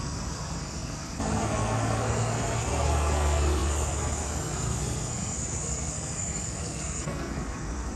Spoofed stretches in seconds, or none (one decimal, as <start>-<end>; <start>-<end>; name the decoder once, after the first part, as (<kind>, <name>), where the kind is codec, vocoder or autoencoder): 0.0-8.0 (codec, SNAC)